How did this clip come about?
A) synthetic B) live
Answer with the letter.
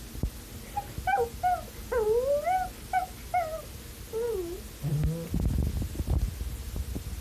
B